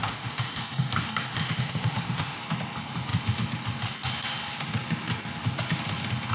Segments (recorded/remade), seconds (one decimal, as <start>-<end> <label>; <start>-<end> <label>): 0.0-0.6 remade; 0.6-1.3 recorded; 1.3-2.4 remade; 2.4-6.3 recorded